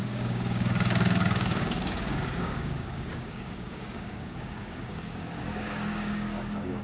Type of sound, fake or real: fake